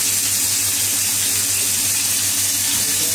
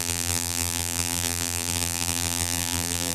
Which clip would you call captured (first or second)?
first